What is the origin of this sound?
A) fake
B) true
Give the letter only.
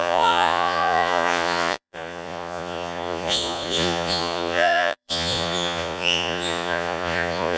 A